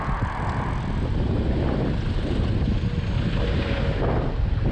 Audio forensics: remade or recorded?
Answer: recorded